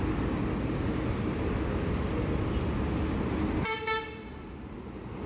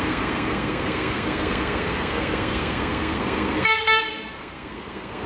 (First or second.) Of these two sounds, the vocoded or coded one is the second